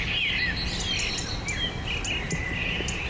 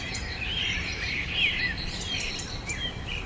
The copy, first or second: second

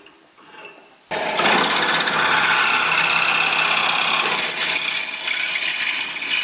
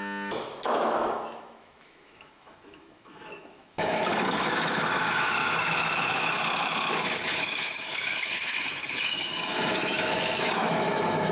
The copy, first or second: second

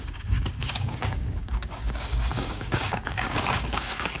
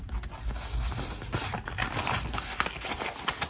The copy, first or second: first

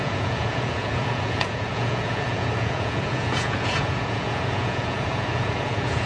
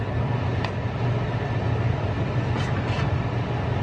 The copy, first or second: first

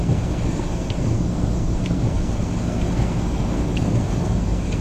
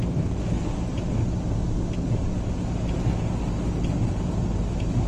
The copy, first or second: first